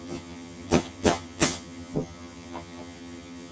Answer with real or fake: fake